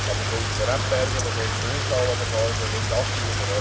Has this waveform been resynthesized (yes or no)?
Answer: no